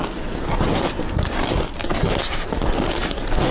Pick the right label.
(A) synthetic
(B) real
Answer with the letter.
B